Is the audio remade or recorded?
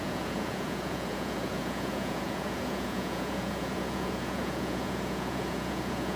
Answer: remade